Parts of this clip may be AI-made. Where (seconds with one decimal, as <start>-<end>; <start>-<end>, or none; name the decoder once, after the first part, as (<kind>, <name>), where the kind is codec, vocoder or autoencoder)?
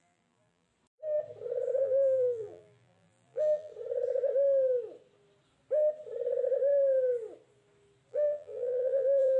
0.0-0.7 (vocoder, BigVGAN v2); 1.8-3.7; 8.1-9.4